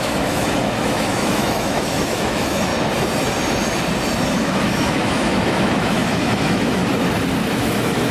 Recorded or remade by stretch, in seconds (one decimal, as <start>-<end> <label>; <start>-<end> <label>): 0.0-2.7 remade; 2.7-4.3 recorded; 4.3-6.8 remade; 6.8-7.5 recorded; 7.5-8.1 remade